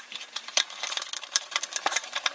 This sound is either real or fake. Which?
fake